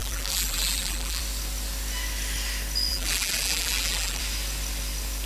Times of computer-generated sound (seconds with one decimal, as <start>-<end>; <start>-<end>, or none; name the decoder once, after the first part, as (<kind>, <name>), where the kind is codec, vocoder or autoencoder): 0.0-1.2 (vocoder, BigVGAN v2); 2.9-4.2